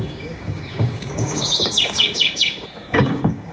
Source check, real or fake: fake